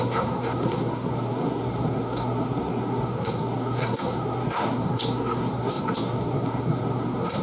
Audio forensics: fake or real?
fake